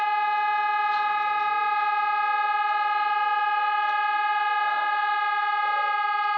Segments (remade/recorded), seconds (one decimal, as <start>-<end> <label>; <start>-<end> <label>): 0.0-6.4 recorded